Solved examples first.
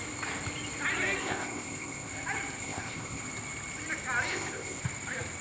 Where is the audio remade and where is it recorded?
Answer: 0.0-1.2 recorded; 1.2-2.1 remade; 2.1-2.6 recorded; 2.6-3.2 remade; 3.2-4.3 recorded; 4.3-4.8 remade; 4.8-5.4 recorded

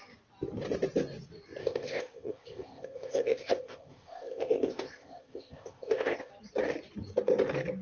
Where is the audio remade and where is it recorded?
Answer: 0.0-1.6 recorded; 1.6-6.3 remade; 6.3-7.8 recorded

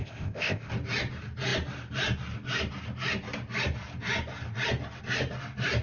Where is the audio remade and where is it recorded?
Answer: 0.0-0.7 remade; 0.7-5.8 recorded

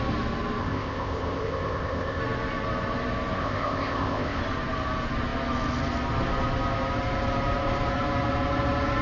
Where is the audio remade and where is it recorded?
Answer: 0.0-0.6 recorded; 0.6-2.2 remade; 2.2-3.4 recorded; 3.4-4.4 remade; 4.4-9.0 recorded